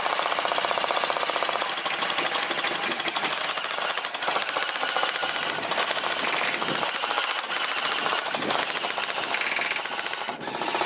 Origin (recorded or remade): recorded